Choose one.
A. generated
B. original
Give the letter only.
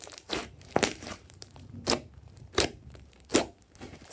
A